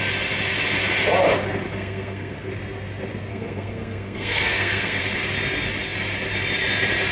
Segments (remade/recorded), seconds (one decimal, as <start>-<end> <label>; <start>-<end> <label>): 0.0-1.7 recorded; 1.7-2.5 remade; 2.5-3.3 recorded; 3.3-5.0 remade; 5.0-7.1 recorded